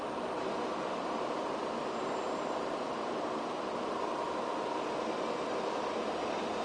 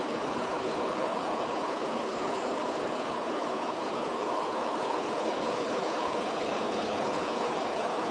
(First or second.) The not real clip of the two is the second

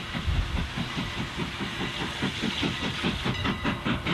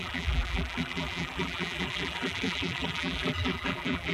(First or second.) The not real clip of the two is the second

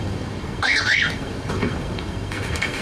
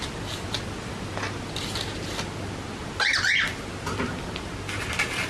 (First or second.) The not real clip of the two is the first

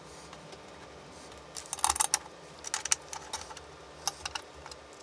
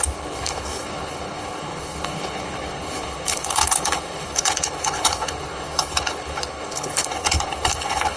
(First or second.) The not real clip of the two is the second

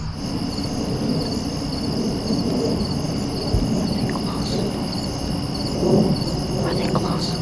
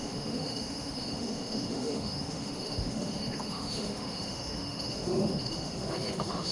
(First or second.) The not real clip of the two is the second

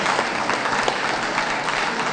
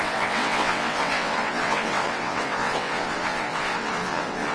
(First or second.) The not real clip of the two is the second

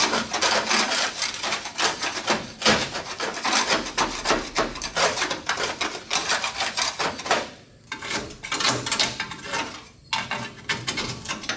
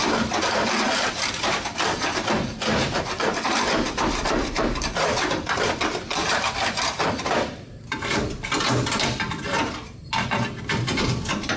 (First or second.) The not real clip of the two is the second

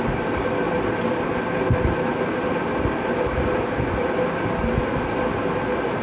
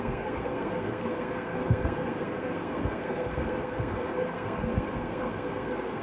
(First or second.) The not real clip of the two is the second